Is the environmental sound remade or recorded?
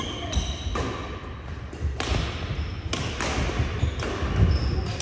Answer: recorded